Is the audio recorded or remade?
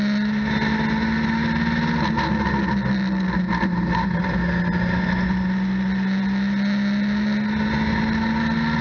recorded